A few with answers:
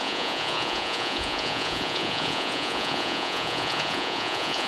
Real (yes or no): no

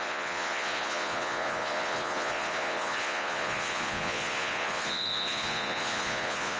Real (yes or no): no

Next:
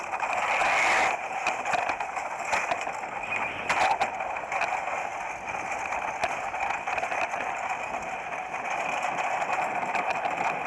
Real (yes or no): yes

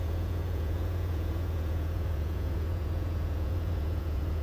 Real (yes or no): no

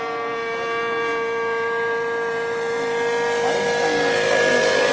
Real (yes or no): yes